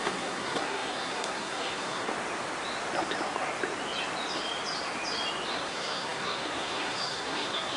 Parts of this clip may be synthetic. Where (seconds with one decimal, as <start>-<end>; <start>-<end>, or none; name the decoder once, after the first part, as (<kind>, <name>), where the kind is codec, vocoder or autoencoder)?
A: 0.0-2.1 (codec, SNAC); 5.5-7.8